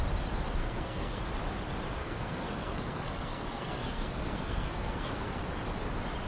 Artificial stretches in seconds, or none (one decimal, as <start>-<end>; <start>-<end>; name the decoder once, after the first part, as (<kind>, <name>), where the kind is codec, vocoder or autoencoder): 0.6-1.2 (codec, SNAC); 2.0-5.4